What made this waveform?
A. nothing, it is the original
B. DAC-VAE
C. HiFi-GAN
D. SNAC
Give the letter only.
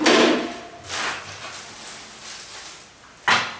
A